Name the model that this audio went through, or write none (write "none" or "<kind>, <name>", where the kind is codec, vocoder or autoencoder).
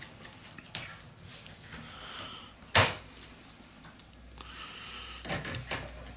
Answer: none